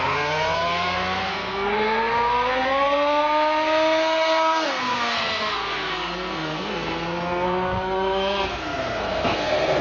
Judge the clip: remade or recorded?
remade